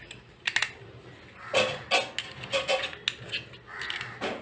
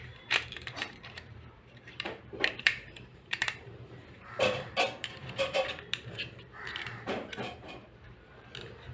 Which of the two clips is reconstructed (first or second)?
second